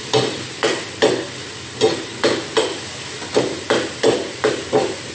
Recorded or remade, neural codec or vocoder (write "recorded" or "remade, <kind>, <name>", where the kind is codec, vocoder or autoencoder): recorded